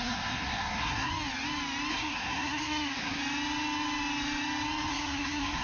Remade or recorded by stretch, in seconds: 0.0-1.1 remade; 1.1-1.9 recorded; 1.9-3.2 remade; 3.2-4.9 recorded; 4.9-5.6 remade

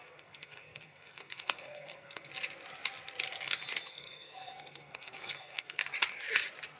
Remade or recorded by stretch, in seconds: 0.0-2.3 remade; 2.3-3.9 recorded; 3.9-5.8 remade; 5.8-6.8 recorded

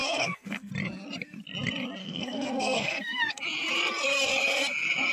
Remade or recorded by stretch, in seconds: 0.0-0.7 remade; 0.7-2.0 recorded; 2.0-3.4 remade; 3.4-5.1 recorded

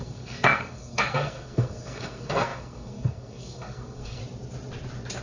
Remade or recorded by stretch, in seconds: 0.0-4.2 remade; 4.2-5.2 recorded

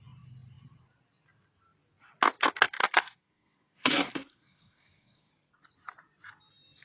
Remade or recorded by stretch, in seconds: 0.0-2.8 recorded; 2.8-5.3 remade; 5.3-6.8 recorded

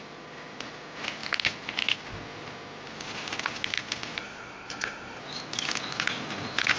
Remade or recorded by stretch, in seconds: 0.0-4.2 recorded; 4.2-5.2 remade; 5.2-6.8 recorded

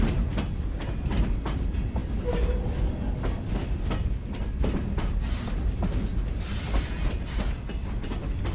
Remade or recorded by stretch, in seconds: 0.0-8.5 recorded